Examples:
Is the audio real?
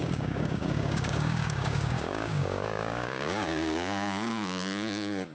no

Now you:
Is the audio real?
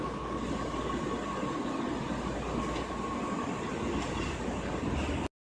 yes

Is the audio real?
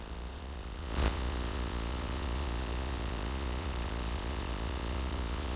no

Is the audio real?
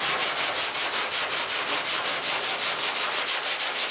yes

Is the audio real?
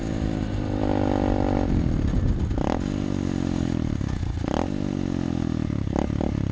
yes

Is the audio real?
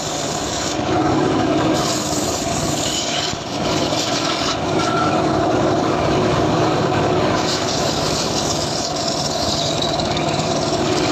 no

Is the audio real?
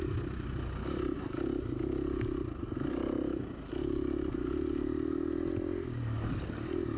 yes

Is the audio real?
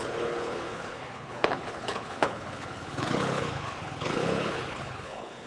no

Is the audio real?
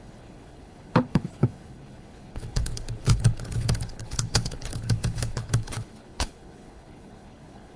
no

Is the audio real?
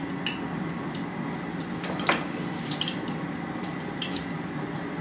yes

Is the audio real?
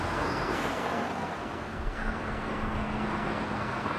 no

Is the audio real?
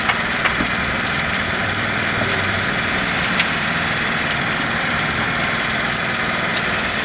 no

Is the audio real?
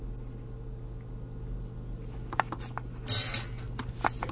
yes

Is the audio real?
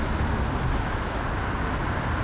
yes